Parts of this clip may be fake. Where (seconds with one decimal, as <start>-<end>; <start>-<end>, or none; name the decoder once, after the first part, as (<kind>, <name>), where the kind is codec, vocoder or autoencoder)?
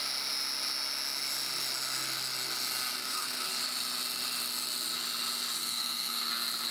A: 3.0-3.5 (codec, SNAC); 5.6-6.3